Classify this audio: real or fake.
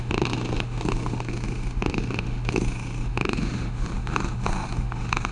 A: fake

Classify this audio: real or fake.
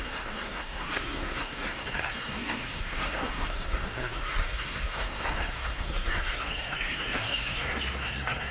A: fake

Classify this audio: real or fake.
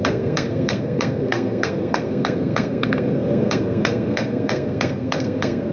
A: fake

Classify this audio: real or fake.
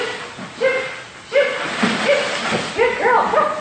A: real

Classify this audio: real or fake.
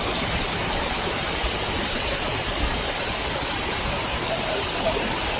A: real